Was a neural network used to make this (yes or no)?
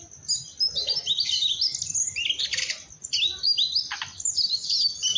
no